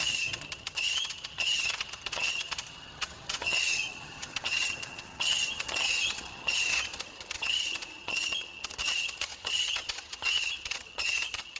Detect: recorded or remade remade